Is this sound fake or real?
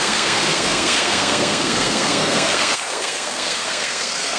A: fake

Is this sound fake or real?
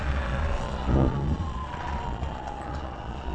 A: fake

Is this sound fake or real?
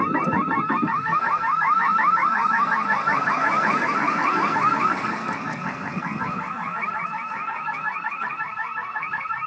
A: fake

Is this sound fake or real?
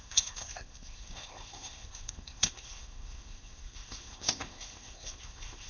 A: fake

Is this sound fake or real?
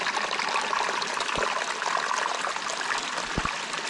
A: real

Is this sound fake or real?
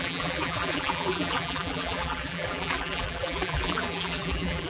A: fake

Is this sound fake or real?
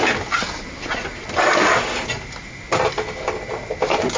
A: real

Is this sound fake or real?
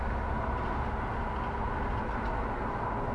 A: real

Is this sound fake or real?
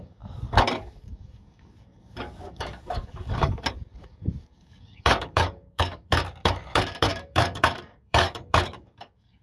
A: fake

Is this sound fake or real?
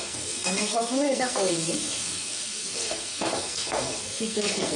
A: fake